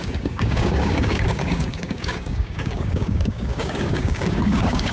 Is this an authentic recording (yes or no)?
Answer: no